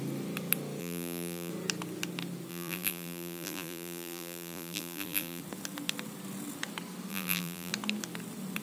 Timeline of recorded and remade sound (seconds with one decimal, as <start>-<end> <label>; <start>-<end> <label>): 0.0-0.8 recorded; 0.8-1.5 remade; 1.5-2.5 recorded; 2.5-5.4 remade; 5.4-7.1 recorded; 7.1-7.7 remade; 7.7-8.6 recorded